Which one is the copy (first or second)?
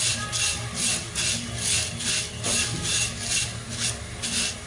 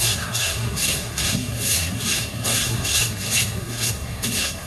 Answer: second